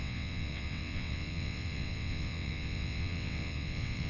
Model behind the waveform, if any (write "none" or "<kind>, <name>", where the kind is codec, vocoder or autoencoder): vocoder, WaveNeXt